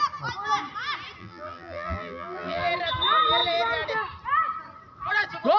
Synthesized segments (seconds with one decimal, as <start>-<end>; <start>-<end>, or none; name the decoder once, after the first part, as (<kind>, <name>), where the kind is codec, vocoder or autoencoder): 1.2-2.7 (vocoder, BigVGAN v2)